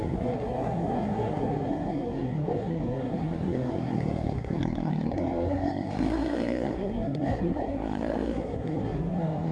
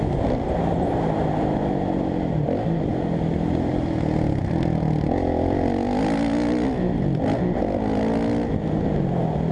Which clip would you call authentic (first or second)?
second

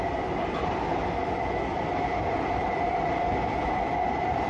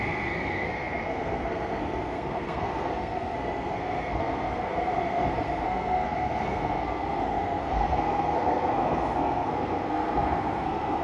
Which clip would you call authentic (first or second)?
first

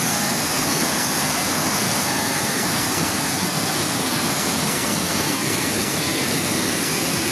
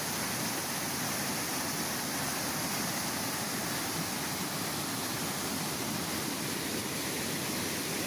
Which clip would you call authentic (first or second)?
second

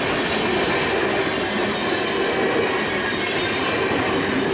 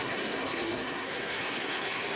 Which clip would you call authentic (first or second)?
first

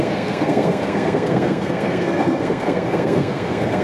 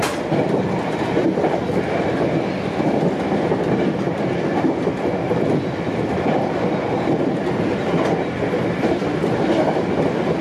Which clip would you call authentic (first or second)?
second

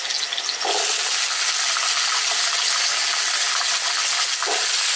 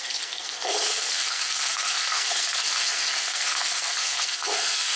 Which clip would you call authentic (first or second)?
first